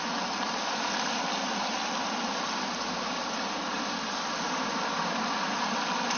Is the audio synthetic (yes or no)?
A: no